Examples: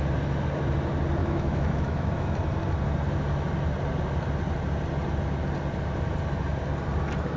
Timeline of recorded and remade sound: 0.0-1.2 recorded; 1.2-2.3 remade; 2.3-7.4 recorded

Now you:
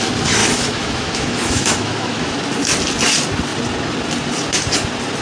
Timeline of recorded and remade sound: 0.0-0.4 recorded; 0.4-2.4 remade; 2.4-5.2 recorded

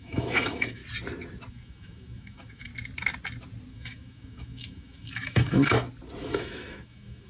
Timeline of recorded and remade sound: 0.0-0.8 remade; 0.8-1.5 recorded; 1.5-2.7 remade; 2.7-3.7 recorded; 3.7-5.7 remade; 5.7-6.2 recorded; 6.2-7.3 remade

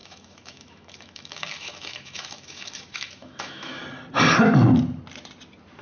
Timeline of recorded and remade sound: 0.0-3.8 remade; 3.8-5.8 recorded

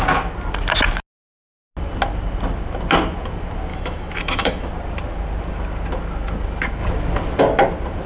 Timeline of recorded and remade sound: 0.0-3.7 recorded; 3.7-4.7 remade; 4.7-8.1 recorded

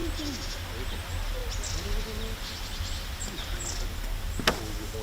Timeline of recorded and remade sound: 0.0-5.0 recorded

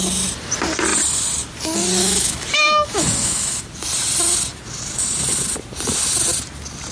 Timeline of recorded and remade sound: 0.0-2.0 recorded; 2.0-3.6 remade; 3.6-6.9 recorded

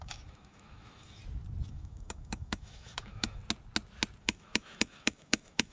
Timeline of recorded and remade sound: 0.0-1.2 remade; 1.2-1.7 recorded; 1.7-3.4 remade; 3.4-4.2 recorded; 4.2-5.7 remade